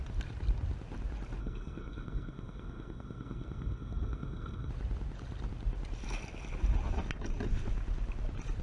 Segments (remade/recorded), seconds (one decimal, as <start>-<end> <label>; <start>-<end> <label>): 0.0-1.4 recorded; 1.4-4.7 remade; 4.7-8.6 recorded